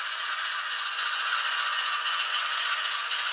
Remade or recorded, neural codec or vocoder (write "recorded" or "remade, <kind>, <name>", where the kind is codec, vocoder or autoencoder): remade, vocoder, Vocos